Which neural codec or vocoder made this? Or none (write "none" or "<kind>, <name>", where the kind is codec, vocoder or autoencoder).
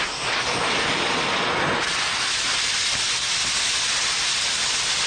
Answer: none